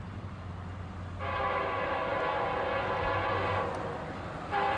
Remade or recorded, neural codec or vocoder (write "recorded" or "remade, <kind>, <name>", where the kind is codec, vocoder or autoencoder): recorded